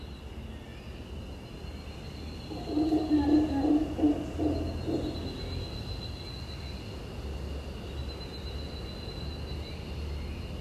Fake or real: real